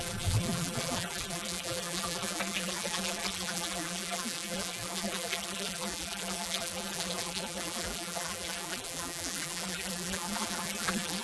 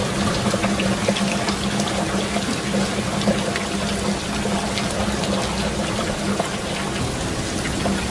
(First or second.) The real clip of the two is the second